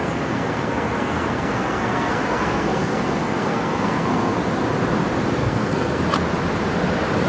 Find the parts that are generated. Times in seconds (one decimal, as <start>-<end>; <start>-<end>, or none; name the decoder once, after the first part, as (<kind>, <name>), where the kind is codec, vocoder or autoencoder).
0.0-4.4 (codec, SNAC); 5.4-6.0